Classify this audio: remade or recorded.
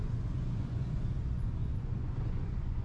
remade